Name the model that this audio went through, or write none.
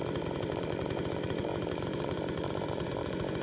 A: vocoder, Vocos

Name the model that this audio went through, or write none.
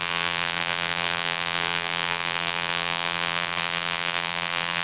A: vocoder, BigVGAN v2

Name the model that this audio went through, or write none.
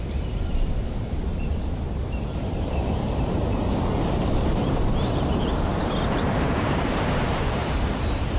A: vocoder, BigVGAN v2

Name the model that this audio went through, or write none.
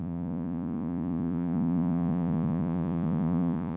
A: vocoder, Vocos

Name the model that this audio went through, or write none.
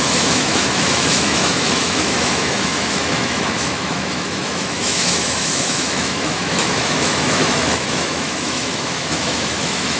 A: autoencoder, DAC-VAE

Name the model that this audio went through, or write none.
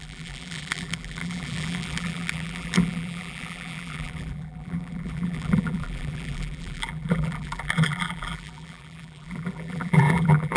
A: vocoder, BigVGAN v2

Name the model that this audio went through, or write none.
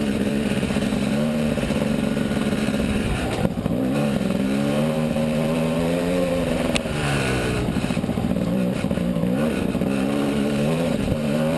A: vocoder, BigVGAN v2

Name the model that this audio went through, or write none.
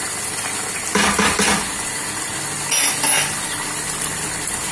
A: none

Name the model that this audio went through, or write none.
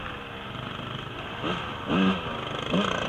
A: none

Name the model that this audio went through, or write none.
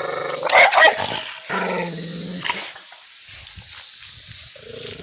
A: none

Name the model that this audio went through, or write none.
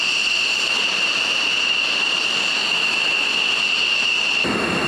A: none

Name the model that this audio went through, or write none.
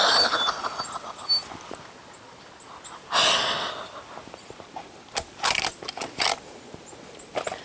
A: none